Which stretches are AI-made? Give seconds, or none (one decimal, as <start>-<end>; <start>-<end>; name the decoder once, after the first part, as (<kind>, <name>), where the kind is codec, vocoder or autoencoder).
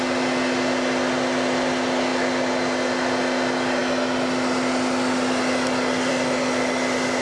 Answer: none